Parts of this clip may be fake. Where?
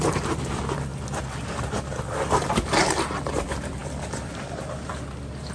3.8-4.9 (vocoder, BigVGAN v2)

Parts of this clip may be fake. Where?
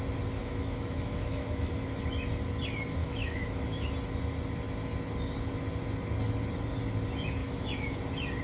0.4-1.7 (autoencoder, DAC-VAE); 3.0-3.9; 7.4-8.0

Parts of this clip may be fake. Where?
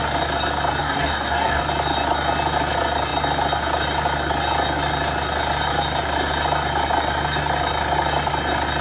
0.8-1.6 (codec, DAC)